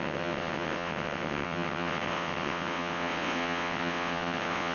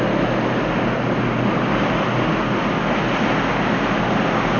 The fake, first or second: first